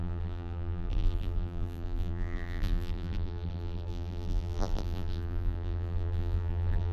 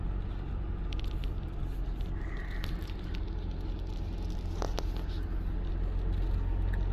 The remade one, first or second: first